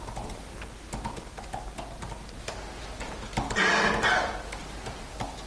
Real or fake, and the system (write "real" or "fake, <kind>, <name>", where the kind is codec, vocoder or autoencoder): real